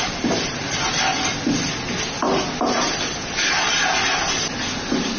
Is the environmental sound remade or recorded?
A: recorded